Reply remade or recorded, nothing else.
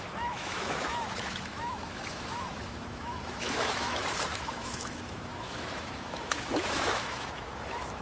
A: remade